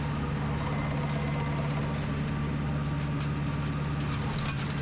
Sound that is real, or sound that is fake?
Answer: real